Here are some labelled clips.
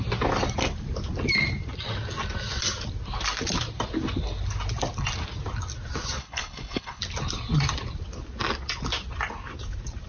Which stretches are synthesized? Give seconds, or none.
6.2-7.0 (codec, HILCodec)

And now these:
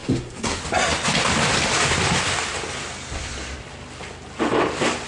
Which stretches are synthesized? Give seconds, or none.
0.0-0.6 (codec, SNAC)

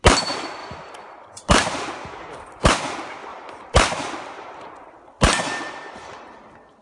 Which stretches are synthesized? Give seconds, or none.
0.6-2.8 (vocoder, BigVGAN v2); 3.3-6.8